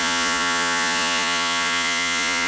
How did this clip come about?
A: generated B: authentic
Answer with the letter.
A